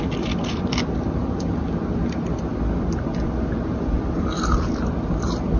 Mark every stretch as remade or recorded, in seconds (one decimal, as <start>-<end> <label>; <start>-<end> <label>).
0.0-5.6 recorded